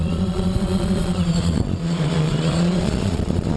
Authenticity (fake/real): fake